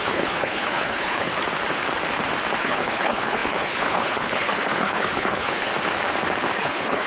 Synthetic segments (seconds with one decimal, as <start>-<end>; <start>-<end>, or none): 0.0-1.3; 2.6-5.7; 6.5-7.1